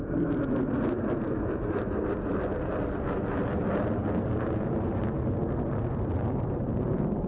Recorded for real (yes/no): yes